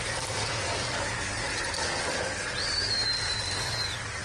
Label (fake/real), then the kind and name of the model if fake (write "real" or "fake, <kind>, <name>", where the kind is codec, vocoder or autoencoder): fake, vocoder, BigVGAN v2